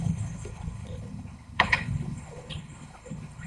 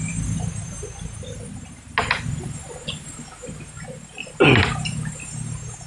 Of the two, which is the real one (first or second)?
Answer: second